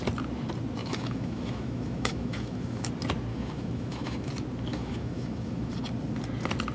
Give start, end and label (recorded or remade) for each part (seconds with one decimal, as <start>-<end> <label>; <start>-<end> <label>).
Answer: 0.0-0.8 recorded; 0.8-2.9 remade; 2.9-3.3 recorded; 3.3-4.3 remade; 4.3-4.7 recorded; 4.7-5.7 remade; 5.7-6.7 recorded